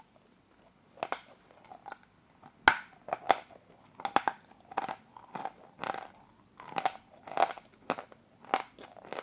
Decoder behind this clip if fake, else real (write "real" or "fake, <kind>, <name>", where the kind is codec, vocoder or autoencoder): real